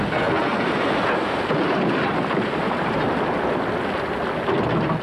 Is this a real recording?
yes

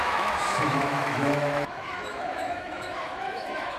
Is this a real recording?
no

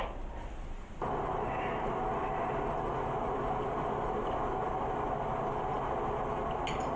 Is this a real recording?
yes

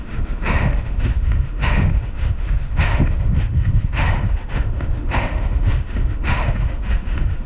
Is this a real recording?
no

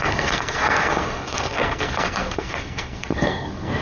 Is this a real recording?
no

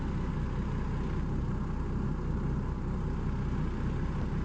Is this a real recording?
yes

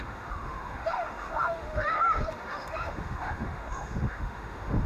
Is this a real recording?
no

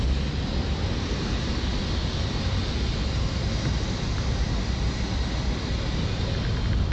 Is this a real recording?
yes